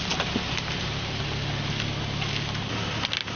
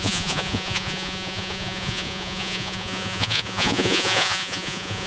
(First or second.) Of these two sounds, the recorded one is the first